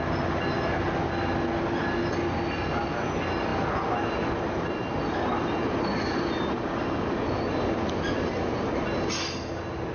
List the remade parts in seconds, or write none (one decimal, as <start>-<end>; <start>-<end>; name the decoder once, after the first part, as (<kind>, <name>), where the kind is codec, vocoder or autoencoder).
none